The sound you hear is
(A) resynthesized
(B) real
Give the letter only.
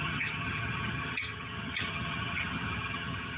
A